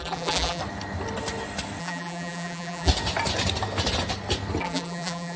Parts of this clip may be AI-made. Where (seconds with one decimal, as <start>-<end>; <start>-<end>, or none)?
0.0-0.6; 1.8-2.9; 4.6-5.4

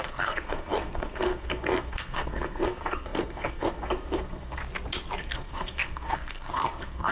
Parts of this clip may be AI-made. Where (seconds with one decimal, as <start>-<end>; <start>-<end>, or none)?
0.0-4.6; 5.2-7.1

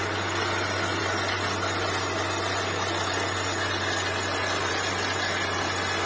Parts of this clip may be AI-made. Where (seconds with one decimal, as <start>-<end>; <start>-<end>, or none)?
none

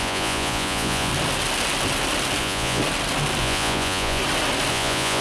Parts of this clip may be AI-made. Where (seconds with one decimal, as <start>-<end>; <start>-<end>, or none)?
0.0-1.1; 2.4-2.8; 3.4-4.2; 4.7-5.2